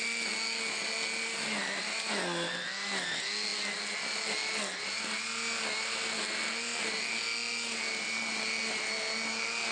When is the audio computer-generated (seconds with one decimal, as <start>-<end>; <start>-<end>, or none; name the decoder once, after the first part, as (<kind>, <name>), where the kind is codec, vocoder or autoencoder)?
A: none